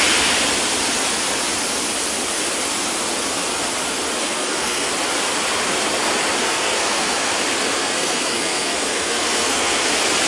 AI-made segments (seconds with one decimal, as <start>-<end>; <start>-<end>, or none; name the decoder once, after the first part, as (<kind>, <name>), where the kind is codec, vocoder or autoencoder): 4.2-4.9 (codec, SNAC); 6.4-7.3; 7.8-9.9